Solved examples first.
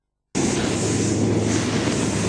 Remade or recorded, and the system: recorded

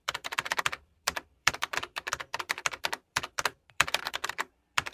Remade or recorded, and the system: remade, vocoder, BigVGAN v2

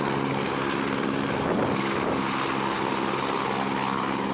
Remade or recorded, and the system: recorded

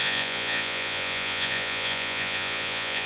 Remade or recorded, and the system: remade, vocoder, Vocos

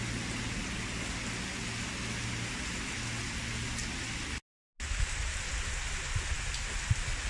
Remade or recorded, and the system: recorded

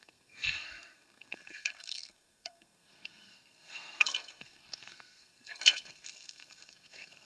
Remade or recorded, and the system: remade, codec, SNAC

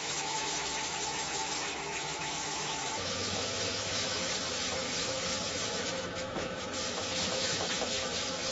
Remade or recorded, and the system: remade, autoencoder, DAC-VAE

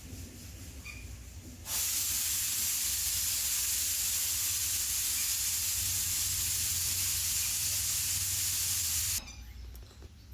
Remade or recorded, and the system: recorded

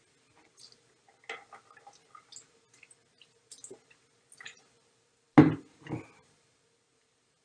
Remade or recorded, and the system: recorded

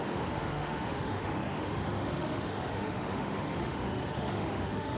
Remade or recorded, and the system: remade, autoencoder, DAC-VAE